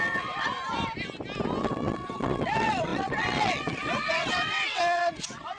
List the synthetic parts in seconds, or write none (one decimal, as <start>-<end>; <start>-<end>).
0.0-0.5; 1.6-5.6